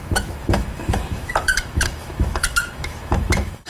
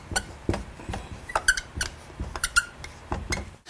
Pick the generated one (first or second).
first